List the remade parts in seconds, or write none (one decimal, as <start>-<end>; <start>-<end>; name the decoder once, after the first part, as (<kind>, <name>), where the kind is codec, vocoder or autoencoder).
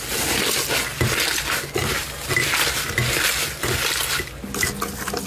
none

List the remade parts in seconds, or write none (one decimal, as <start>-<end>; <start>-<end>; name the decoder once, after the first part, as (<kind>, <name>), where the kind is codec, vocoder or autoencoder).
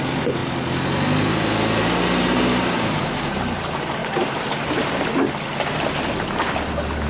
none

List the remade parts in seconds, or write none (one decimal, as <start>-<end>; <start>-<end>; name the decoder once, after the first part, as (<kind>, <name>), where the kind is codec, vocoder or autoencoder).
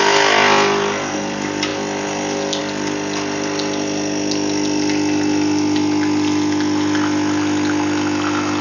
none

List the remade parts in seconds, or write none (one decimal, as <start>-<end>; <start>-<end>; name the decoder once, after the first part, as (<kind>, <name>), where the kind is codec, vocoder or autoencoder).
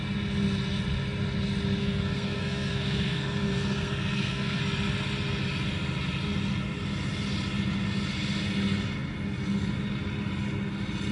1.8-4.6 (codec, SNAC)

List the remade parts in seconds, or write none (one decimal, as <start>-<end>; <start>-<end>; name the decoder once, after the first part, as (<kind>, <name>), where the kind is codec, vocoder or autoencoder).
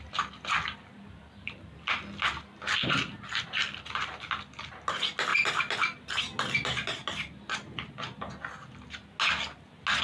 none